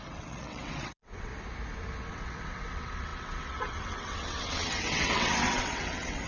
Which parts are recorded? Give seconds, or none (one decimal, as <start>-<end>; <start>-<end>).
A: 1.3-2.1